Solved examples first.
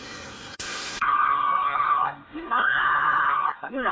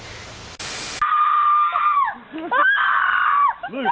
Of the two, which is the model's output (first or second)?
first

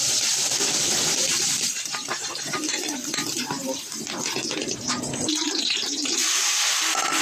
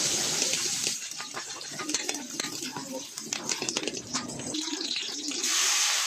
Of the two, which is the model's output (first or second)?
second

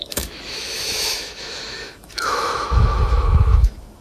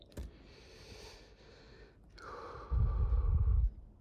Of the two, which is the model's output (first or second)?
first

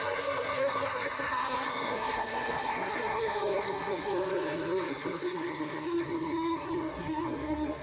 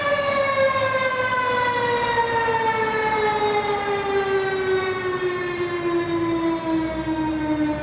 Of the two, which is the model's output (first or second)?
first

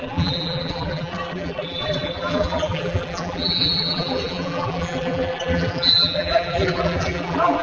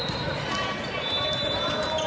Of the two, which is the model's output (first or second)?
first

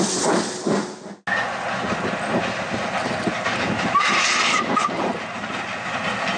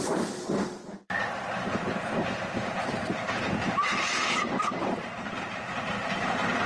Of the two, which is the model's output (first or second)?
second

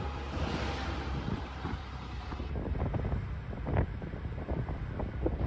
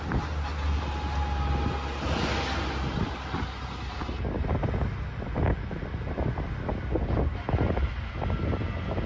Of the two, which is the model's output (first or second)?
first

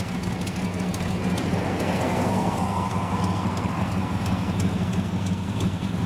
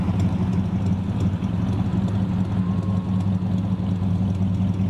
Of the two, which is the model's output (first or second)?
first